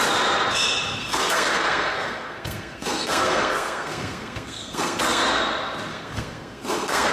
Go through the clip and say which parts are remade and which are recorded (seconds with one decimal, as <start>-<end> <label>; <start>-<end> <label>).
0.0-1.0 recorded; 1.0-5.3 remade; 5.3-5.9 recorded; 5.9-7.1 remade